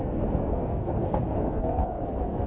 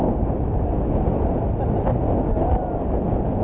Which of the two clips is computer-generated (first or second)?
first